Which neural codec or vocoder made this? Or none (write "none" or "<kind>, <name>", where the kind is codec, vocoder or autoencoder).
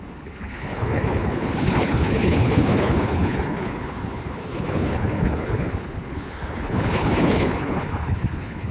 codec, HILCodec